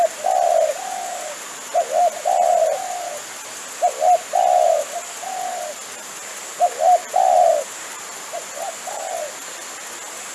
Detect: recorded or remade recorded